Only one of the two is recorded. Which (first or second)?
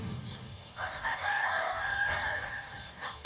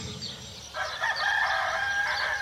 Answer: second